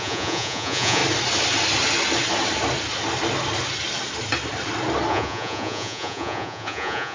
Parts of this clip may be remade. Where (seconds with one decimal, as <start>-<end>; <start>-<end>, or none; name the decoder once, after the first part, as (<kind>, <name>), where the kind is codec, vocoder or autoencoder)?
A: 0.0-1.0 (vocoder, Vocos); 5.1-7.1